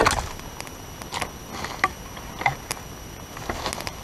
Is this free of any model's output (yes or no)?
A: yes